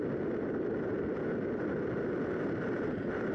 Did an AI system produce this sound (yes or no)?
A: no